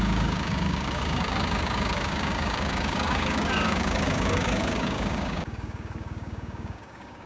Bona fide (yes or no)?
no